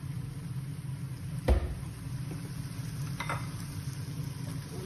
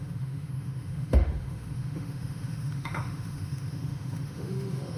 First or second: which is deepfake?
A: second